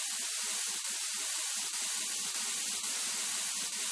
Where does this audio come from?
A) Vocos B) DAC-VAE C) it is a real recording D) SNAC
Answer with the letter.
C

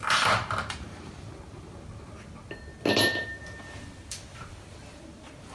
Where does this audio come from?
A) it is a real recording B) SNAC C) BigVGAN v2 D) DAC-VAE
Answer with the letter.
A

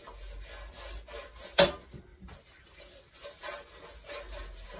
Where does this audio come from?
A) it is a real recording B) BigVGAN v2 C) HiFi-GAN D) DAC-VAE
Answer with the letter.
A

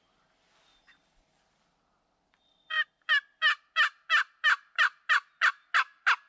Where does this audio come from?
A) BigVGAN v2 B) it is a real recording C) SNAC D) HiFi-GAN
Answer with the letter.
B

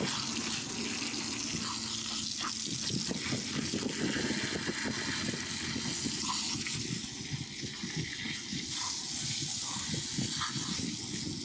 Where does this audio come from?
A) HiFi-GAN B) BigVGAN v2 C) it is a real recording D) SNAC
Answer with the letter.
C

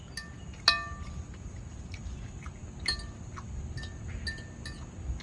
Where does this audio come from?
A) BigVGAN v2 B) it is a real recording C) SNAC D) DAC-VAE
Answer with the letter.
B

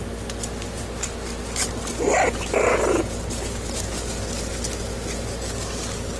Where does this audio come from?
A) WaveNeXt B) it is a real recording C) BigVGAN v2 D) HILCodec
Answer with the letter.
B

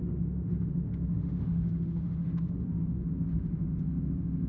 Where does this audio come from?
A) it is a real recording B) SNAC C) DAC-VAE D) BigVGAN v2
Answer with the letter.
C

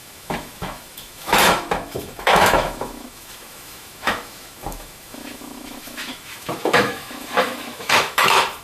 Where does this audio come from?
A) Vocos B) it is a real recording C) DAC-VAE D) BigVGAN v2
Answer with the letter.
C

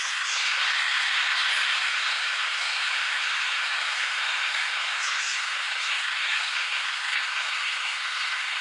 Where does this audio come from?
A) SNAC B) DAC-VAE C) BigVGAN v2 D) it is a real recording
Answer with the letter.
A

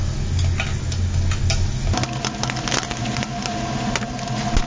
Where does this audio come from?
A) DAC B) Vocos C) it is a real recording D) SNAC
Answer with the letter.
C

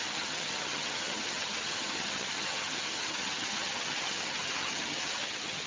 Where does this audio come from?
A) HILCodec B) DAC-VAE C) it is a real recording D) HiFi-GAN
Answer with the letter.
D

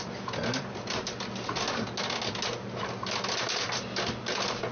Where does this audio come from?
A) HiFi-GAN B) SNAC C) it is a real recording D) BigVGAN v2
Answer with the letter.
C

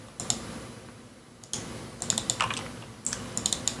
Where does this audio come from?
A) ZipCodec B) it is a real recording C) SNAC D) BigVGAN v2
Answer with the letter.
B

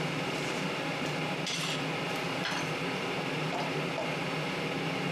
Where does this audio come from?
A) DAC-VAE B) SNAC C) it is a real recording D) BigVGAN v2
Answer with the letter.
D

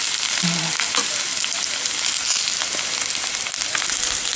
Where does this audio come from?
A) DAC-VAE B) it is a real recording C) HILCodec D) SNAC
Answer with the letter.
B